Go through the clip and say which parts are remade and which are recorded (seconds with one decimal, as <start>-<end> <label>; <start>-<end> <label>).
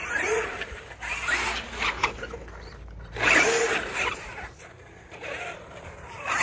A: 0.0-6.4 remade